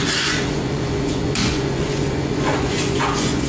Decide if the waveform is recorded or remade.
remade